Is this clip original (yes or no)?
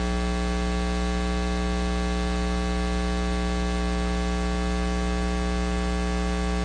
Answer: yes